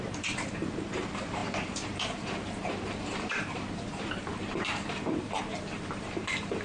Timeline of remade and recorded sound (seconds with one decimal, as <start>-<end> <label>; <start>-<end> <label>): 0.0-6.6 remade